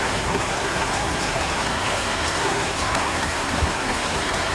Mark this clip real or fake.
fake